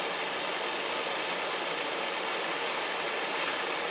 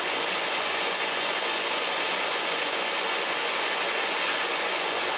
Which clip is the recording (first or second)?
first